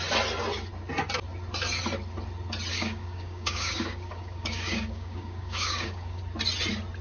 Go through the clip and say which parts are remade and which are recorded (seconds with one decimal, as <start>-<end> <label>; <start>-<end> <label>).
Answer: 0.0-2.7 recorded; 2.7-6.2 remade; 6.2-7.0 recorded